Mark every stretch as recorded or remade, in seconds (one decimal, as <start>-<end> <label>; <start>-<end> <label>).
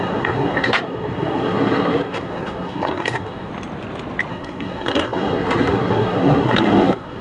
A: 0.0-3.5 remade; 3.5-4.3 recorded; 4.3-7.2 remade